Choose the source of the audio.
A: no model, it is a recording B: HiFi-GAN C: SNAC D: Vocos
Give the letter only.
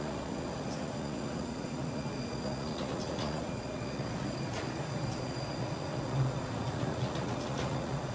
D